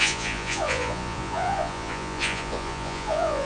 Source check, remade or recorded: remade